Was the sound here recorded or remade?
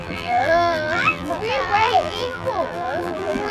remade